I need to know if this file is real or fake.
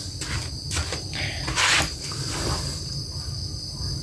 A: real